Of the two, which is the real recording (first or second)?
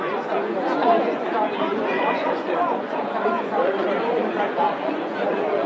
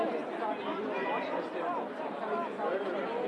second